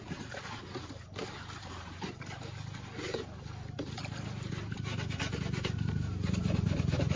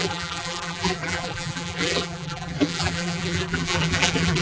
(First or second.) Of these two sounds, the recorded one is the first